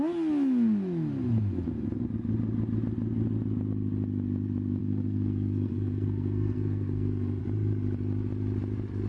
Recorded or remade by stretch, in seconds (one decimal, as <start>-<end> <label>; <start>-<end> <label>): 0.0-4.8 recorded; 4.8-7.4 remade; 7.4-9.1 recorded